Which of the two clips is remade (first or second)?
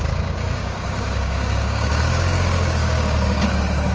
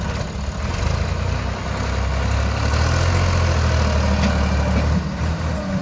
first